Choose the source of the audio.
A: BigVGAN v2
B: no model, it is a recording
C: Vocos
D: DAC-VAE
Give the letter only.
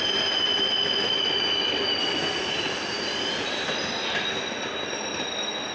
B